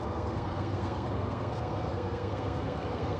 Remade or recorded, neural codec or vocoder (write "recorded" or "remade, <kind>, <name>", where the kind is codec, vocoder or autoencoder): remade, codec, SNAC